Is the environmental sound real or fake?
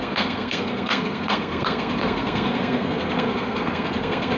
fake